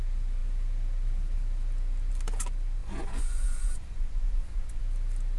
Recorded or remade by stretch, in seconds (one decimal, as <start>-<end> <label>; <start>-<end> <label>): 0.0-2.8 recorded; 2.8-4.8 remade; 4.8-5.4 recorded